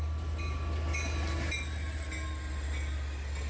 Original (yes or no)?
yes